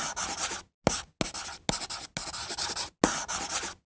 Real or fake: real